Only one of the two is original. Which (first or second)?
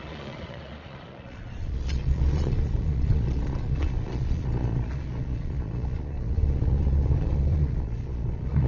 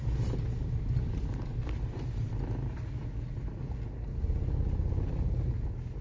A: second